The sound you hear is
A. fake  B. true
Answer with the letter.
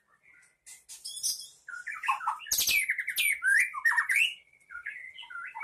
B